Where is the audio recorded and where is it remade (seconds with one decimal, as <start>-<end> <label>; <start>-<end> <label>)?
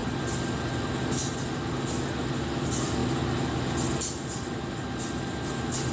0.0-5.9 recorded